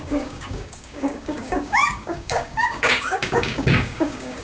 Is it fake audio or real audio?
fake